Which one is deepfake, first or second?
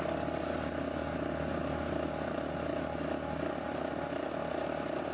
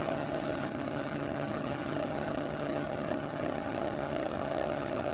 second